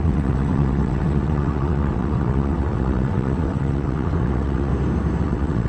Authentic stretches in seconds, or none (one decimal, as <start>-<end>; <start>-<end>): 4.7-5.2